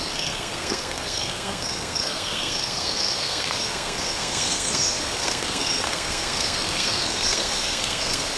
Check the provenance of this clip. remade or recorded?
remade